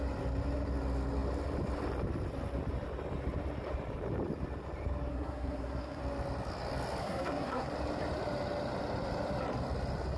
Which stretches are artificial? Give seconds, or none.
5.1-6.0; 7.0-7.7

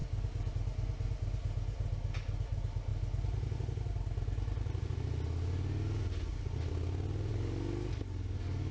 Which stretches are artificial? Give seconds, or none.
0.0-0.5; 7.3-8.7

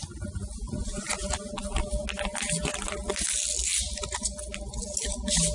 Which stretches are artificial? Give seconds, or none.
none

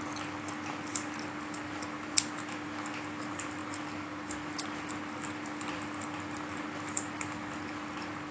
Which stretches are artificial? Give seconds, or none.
none

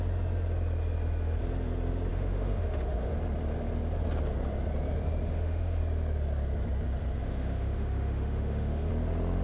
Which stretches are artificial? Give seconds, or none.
2.1-3.1; 5.2-5.8; 7.2-8.9

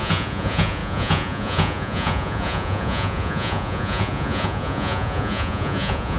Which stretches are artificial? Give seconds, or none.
0.0-6.2

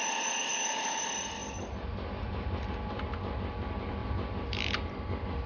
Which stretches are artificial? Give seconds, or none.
0.5-1.0